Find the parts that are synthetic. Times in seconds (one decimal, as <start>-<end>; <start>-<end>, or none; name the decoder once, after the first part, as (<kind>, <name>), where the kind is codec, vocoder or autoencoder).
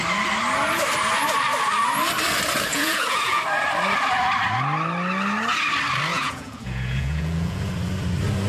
2.7-3.4 (vocoder, Vocos); 6.1-7.6